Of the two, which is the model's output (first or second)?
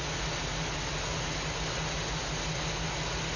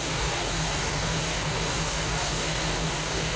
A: second